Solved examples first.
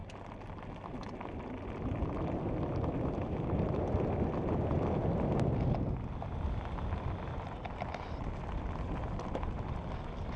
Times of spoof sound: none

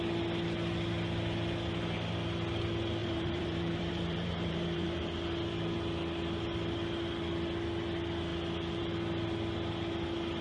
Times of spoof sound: 3.0-5.0 (vocoder, BigVGAN v2)

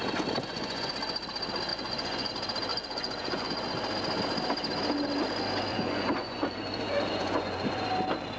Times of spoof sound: 0.4-0.9 (vocoder, Vocos); 1.7-2.3; 2.7-3.5; 5.7-7.9